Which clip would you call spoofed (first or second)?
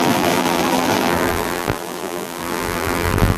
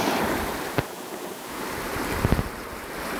first